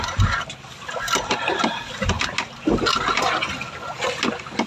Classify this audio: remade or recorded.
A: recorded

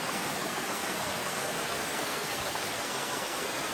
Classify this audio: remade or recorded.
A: remade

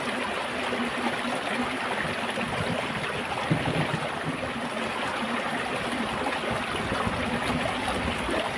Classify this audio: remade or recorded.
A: recorded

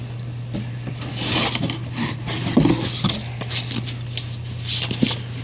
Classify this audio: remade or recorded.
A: recorded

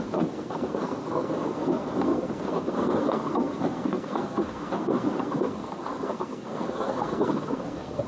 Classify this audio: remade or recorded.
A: remade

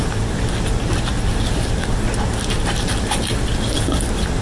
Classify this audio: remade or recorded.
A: recorded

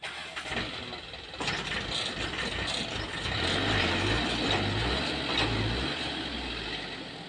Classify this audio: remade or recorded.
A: recorded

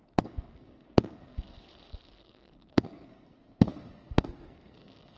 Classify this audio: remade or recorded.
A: remade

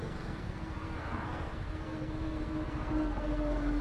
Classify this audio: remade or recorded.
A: remade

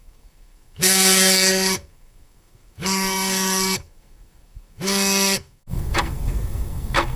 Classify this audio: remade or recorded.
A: remade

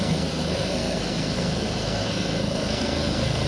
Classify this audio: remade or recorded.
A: remade